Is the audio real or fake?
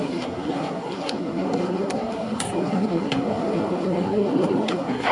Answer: fake